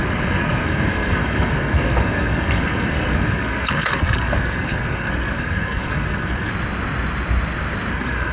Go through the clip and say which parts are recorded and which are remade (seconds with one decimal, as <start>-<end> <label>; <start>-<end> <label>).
0.0-6.5 remade; 6.5-7.9 recorded; 7.9-8.3 remade

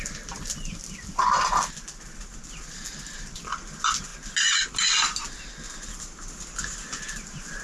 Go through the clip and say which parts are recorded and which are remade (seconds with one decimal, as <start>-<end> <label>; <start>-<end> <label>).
0.0-4.1 remade; 4.1-6.5 recorded; 6.5-7.6 remade

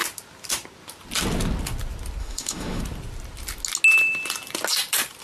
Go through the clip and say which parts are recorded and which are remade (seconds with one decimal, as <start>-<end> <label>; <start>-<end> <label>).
0.0-2.2 recorded; 2.2-2.8 remade; 2.8-5.2 recorded